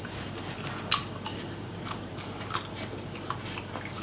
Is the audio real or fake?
real